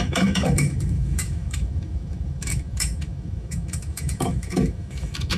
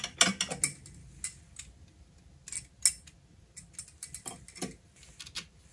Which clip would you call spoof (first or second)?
first